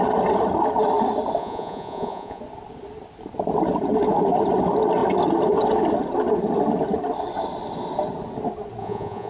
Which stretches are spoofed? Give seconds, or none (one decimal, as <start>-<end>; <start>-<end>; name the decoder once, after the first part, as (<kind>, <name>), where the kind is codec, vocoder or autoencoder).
1.4-2.4 (vocoder, Vocos); 8.8-9.3